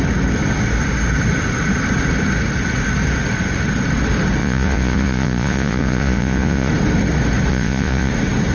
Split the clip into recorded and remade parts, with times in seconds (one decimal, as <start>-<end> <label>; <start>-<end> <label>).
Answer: 0.0-4.4 recorded; 4.4-6.7 remade; 6.7-7.5 recorded; 7.5-8.1 remade; 8.1-8.5 recorded